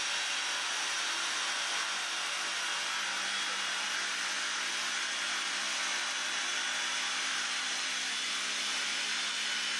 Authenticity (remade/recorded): recorded